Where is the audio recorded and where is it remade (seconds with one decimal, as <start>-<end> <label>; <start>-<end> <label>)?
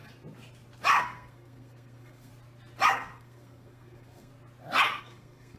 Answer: 0.0-1.0 recorded; 1.0-2.3 remade; 2.3-2.9 recorded; 2.9-4.3 remade; 4.3-5.0 recorded; 5.0-5.6 remade